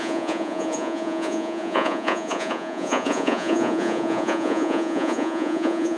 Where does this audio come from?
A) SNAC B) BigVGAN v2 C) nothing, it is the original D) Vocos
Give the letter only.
D